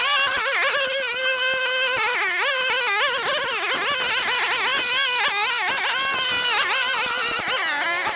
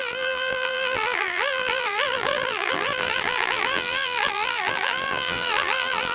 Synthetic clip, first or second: second